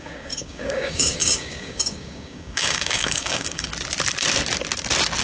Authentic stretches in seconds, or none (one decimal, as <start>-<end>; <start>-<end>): 3.7-5.2